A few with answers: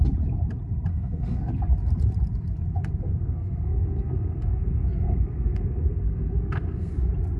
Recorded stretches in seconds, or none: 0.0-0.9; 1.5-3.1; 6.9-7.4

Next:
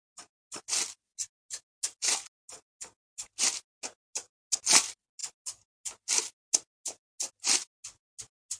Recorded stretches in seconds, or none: 0.0-8.6